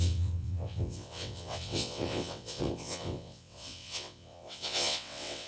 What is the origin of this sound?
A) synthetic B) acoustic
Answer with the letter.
A